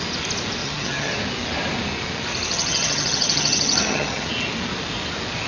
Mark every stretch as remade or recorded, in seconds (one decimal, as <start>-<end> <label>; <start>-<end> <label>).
0.0-0.6 recorded; 0.6-1.1 remade; 1.1-2.5 recorded; 2.5-4.3 remade; 4.3-5.5 recorded